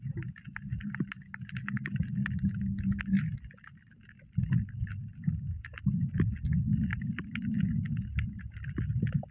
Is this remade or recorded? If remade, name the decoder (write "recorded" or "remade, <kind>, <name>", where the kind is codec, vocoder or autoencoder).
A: recorded